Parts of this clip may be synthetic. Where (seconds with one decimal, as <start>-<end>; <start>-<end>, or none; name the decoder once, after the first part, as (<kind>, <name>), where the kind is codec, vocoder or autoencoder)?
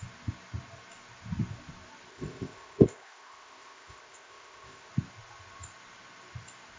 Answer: 2.1-4.9 (codec, ZipCodec)